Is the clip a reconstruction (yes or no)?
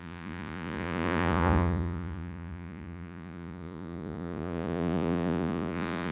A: yes